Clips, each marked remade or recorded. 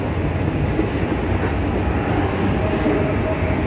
recorded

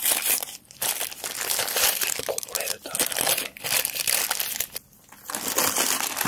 recorded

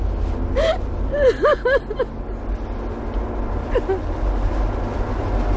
recorded